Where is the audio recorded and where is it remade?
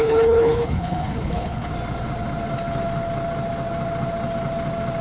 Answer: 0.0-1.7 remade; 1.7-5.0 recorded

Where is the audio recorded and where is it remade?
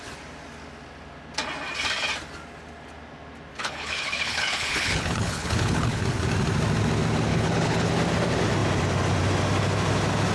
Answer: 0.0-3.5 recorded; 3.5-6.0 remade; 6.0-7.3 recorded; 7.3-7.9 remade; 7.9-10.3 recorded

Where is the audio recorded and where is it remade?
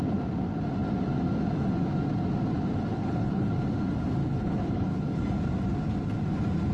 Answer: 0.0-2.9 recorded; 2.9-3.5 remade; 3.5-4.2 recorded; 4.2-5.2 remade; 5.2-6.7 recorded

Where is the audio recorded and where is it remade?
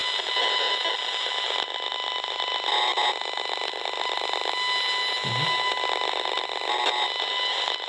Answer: 0.0-7.9 recorded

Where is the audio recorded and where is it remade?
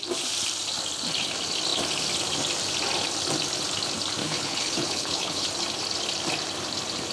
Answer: 0.0-4.2 recorded; 4.2-5.5 remade; 5.5-7.1 recorded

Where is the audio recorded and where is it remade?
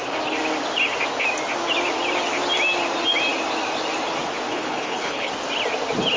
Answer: 0.0-4.5 recorded; 4.5-5.3 remade; 5.3-6.2 recorded